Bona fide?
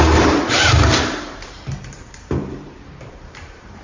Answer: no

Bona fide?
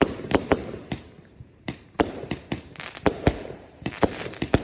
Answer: no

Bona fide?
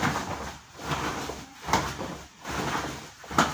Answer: yes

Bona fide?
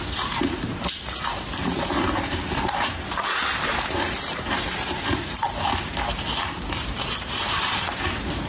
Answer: no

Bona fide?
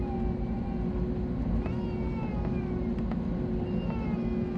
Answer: yes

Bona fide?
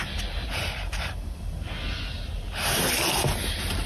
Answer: yes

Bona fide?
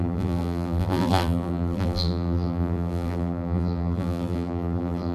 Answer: no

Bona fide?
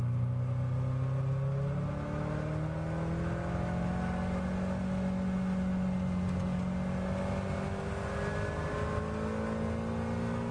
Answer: yes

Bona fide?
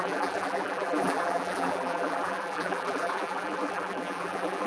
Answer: no